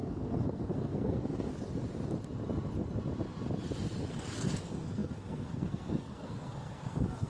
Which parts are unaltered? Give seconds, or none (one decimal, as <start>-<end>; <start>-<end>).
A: 1.5-4.1